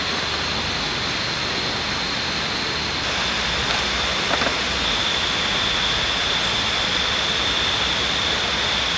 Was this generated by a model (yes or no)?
no